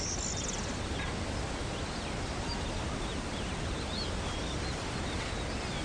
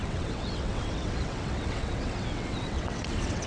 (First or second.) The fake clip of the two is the second